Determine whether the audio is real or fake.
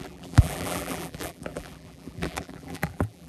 fake